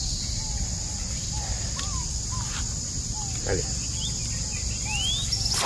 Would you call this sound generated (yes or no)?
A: no